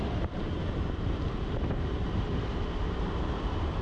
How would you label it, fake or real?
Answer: fake